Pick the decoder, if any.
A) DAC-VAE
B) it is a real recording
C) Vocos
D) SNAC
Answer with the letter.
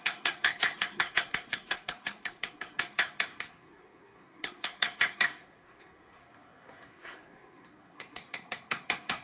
D